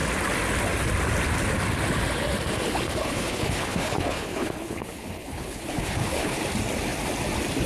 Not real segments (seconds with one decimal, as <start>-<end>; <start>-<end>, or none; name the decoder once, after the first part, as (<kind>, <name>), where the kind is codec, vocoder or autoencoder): 3.0-6.4 (codec, HILCodec)